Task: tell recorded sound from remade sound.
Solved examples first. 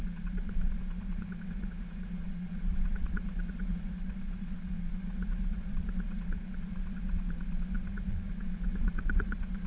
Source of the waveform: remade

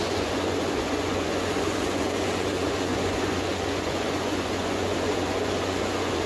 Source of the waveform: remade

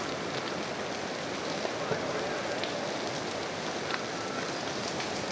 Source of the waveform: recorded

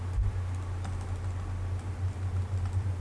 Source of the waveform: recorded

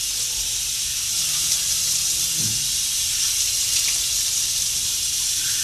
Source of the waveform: recorded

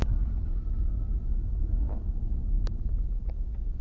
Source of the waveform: recorded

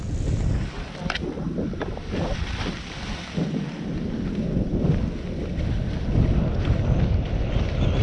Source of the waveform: recorded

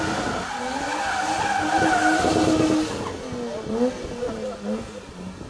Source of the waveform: recorded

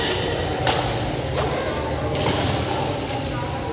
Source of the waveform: recorded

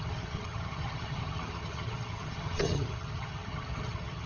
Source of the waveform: remade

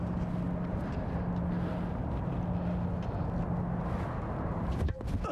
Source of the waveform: recorded